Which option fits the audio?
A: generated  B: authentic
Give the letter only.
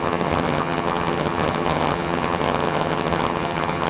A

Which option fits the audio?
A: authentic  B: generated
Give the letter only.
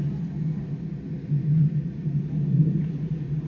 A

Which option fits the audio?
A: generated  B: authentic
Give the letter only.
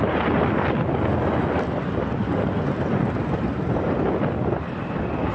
B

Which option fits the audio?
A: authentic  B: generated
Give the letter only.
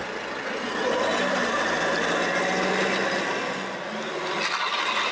A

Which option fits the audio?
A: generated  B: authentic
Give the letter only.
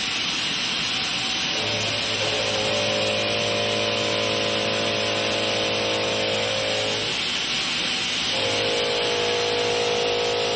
B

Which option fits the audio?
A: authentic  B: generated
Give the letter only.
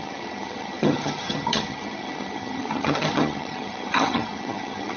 B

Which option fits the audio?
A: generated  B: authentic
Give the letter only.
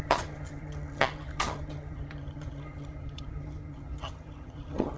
A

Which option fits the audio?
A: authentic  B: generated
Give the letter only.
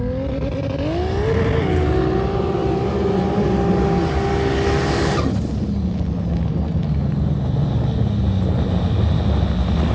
A